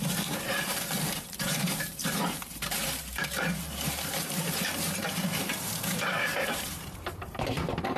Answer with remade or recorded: remade